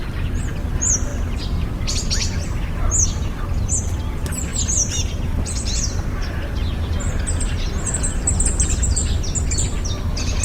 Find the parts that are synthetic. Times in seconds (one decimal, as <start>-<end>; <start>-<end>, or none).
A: none